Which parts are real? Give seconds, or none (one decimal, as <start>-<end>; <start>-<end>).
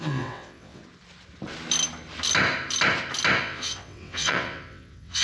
0.8-3.4